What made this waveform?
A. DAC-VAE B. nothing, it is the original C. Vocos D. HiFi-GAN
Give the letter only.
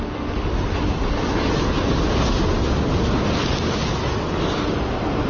B